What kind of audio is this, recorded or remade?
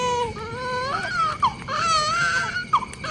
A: recorded